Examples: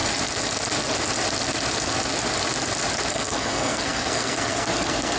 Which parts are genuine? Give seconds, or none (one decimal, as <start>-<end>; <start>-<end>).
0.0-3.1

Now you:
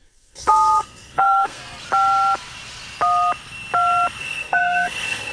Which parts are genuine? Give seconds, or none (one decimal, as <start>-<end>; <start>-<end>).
1.6-4.2

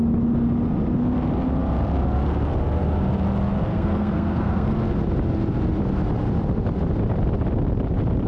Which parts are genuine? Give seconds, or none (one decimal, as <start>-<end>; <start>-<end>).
0.0-3.7; 4.7-8.3

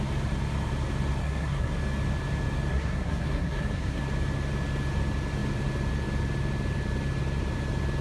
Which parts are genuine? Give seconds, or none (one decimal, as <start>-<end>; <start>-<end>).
0.0-1.2; 1.8-2.7; 4.0-8.0

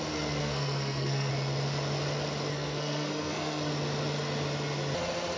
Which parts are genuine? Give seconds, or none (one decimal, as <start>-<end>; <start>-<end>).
0.0-0.4; 1.3-2.5; 3.7-5.4

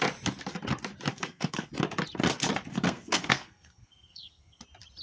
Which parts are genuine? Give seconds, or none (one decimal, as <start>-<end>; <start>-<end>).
0.0-1.1; 1.7-2.7; 4.6-5.0

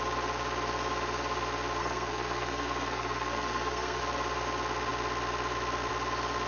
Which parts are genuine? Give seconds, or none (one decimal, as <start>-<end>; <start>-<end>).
0.0-1.8; 4.0-6.5

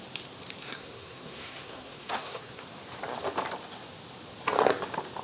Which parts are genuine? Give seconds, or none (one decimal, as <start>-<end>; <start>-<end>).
0.0-0.6; 2.6-5.2